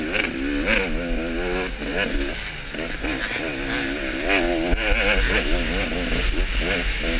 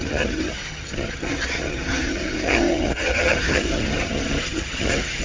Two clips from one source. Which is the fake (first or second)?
second